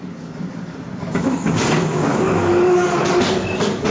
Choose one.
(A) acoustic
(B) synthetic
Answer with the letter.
B